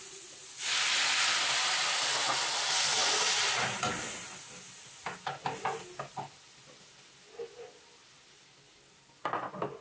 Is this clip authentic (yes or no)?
yes